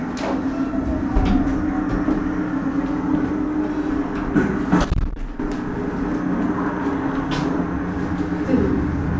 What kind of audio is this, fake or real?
real